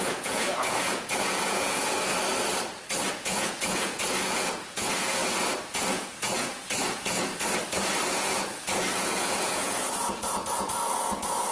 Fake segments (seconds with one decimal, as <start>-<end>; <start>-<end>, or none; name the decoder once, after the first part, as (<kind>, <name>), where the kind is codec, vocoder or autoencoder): 0.0-2.1 (vocoder, Vocos); 3.1-5.2; 5.7-7.3; 8.1-11.5